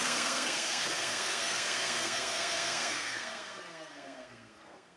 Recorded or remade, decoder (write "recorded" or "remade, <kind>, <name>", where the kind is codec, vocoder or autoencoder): remade, codec, SNAC